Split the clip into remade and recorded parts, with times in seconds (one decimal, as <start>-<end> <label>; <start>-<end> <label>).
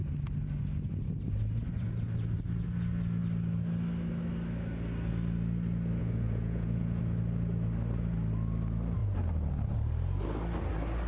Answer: 0.0-6.0 recorded; 6.0-7.0 remade; 7.0-11.1 recorded